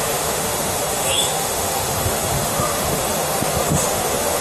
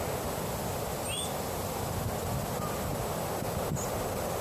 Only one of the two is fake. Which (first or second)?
first